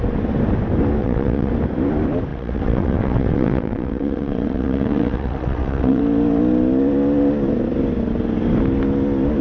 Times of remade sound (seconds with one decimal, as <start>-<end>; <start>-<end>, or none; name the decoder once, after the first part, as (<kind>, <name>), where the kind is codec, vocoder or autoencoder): 1.0-1.5 (vocoder, WaveNeXt); 2.3-6.0